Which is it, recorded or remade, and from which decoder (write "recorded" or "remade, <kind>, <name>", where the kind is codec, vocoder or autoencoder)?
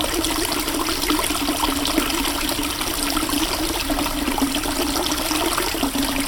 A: recorded